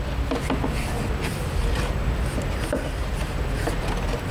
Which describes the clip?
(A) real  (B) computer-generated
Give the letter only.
A